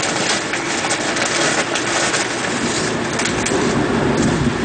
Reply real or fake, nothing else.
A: real